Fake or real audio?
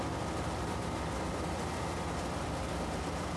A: real